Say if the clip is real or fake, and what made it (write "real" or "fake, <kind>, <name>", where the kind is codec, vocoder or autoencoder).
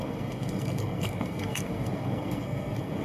fake, codec, SNAC